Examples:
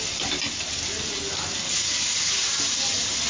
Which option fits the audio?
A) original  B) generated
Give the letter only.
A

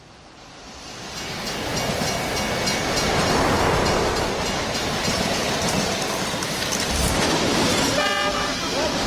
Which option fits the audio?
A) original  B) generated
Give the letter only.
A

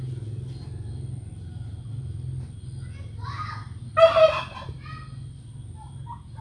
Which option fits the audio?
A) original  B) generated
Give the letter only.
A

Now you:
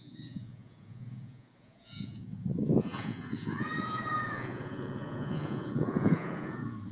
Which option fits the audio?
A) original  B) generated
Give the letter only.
B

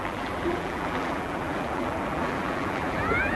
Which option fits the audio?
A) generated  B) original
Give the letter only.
A